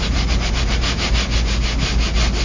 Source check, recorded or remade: recorded